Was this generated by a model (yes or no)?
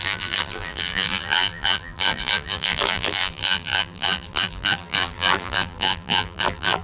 yes